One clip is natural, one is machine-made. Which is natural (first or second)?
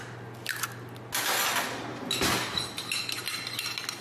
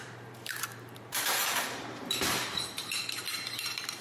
first